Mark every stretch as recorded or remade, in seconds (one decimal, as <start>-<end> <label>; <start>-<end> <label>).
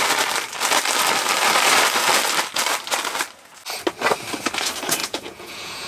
0.0-5.0 recorded; 5.0-5.9 remade